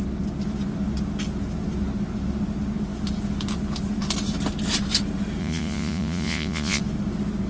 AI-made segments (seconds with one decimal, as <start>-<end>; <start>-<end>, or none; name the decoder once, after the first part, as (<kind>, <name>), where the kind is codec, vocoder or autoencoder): 5.4-6.8 (vocoder, Vocos)